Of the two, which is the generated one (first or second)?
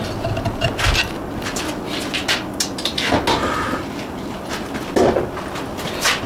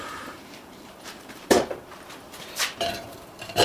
second